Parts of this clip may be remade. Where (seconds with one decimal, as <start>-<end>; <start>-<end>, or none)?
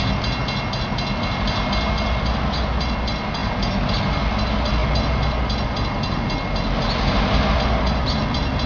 none